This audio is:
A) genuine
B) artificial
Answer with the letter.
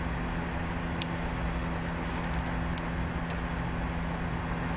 A